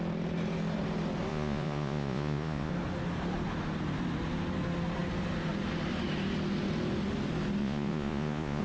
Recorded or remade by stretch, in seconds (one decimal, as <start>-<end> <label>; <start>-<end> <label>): 0.0-1.3 recorded; 1.3-2.7 remade; 2.7-7.6 recorded; 7.6-8.6 remade